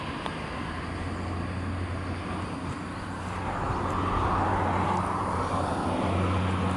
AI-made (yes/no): no